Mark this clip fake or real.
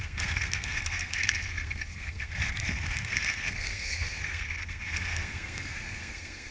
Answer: fake